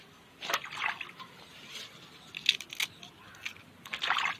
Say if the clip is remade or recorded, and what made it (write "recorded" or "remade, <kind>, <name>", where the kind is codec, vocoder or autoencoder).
recorded